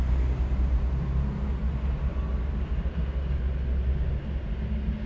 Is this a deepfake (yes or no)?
no